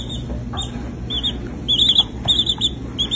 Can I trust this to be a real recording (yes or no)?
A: yes